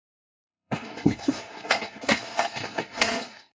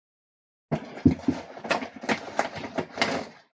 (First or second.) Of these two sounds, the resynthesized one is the first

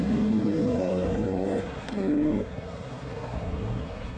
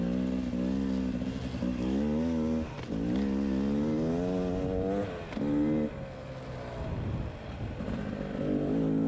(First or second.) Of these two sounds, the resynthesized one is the first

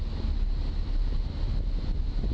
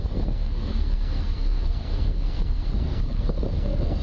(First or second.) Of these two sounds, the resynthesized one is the second